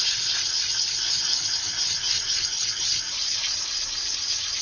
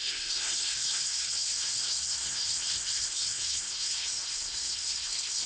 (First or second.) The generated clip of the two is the second